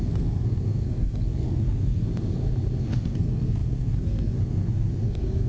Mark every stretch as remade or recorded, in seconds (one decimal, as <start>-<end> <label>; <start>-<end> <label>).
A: 0.0-2.1 remade; 2.1-2.8 recorded; 2.8-5.5 remade